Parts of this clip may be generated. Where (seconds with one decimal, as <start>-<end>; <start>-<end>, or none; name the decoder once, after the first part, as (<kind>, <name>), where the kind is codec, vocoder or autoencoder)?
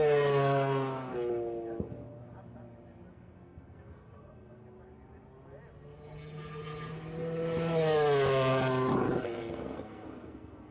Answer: 0.0-1.1 (codec, SNAC); 3.1-4.6; 9.2-10.7